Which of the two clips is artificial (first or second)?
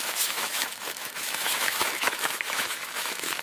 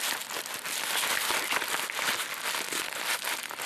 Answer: first